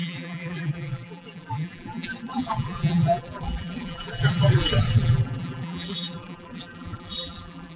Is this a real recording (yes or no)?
no